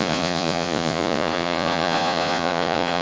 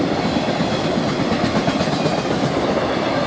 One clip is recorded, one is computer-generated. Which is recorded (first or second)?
second